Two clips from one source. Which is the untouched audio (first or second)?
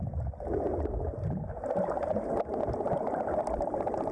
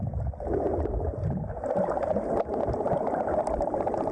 first